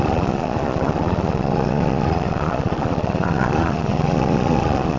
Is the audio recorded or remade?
remade